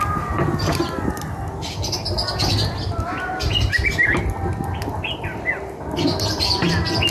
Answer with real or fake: real